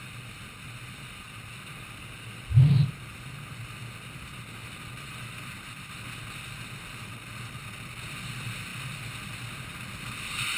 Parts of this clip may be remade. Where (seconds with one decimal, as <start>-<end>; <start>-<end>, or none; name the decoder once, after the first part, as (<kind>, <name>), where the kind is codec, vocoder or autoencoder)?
none